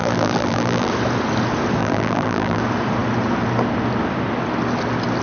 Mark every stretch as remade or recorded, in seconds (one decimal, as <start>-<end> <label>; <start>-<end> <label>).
0.0-0.9 remade; 0.9-1.8 recorded; 1.8-2.6 remade; 2.6-5.2 recorded